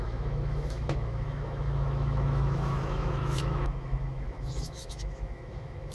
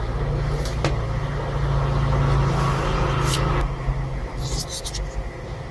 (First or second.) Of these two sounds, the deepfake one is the first